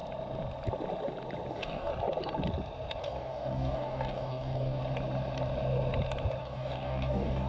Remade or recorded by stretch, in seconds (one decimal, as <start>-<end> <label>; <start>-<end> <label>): 0.0-1.5 recorded; 1.5-1.9 remade; 1.9-3.0 recorded; 3.0-4.8 remade; 4.8-6.4 recorded; 6.4-7.5 remade